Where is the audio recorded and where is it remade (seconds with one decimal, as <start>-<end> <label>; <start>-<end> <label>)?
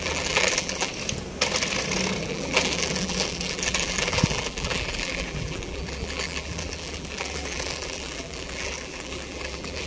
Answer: 0.0-0.9 remade; 0.9-2.2 recorded; 2.2-9.9 remade